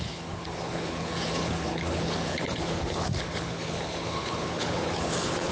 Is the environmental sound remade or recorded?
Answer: remade